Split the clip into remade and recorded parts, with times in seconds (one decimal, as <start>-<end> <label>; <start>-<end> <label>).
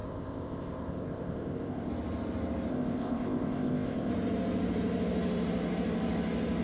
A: 0.0-1.9 remade; 1.9-2.7 recorded; 2.7-4.1 remade; 4.1-6.6 recorded